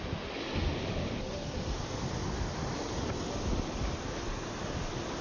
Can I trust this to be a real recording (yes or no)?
yes